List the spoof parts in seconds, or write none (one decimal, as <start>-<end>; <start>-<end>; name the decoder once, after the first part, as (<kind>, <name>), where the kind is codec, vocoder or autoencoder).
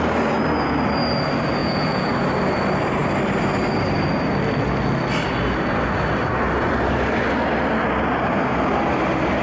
1.6-2.1 (vocoder, Vocos)